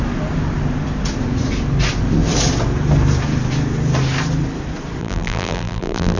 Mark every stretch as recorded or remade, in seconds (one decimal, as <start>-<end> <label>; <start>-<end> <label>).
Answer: 0.0-5.0 recorded; 5.0-6.2 remade